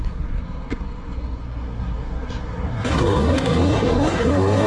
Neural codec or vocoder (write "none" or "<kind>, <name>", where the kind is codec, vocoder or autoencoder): codec, SNAC